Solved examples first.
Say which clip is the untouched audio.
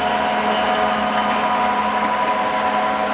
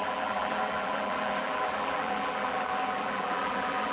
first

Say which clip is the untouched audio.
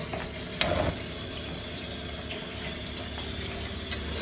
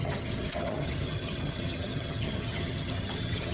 first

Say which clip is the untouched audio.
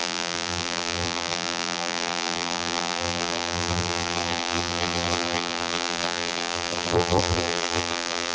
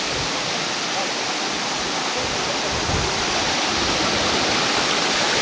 second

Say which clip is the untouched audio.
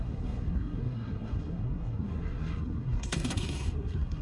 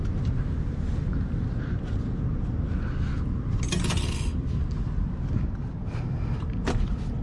second